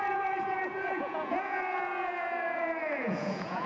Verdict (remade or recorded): remade